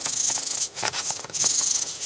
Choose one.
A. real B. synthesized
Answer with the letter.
B